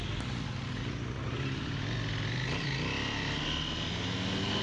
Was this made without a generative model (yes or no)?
yes